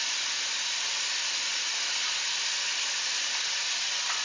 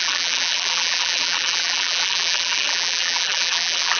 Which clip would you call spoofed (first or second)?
second